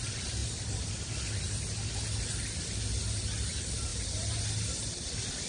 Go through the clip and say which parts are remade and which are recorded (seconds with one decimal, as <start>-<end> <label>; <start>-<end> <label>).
0.0-5.5 recorded